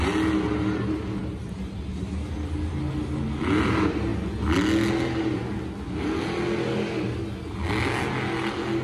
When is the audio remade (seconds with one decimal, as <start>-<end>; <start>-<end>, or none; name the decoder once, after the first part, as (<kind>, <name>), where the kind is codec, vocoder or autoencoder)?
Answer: none